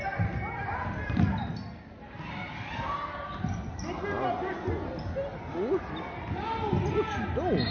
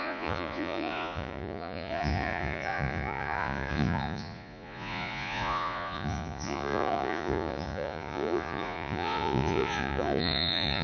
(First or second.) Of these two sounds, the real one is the first